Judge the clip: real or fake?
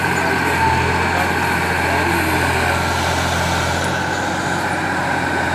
real